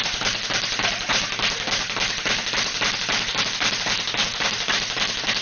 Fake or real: real